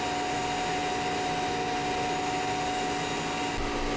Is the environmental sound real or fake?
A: real